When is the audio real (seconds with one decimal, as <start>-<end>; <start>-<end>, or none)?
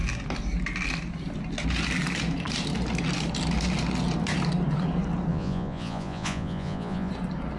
0.0-5.3; 7.1-7.6